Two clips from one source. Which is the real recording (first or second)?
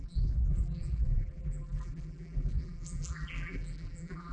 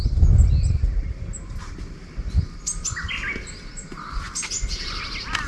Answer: second